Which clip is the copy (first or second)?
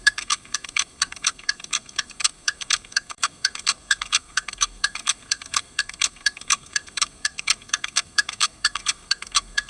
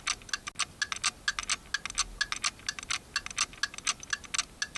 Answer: first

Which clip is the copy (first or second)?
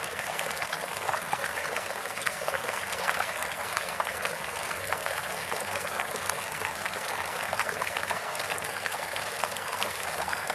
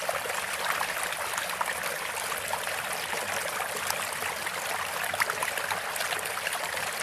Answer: first